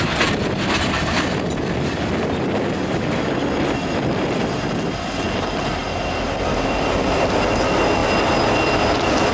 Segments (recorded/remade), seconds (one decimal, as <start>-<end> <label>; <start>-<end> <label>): 0.0-9.3 recorded